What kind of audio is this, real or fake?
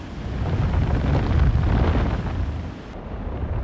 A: real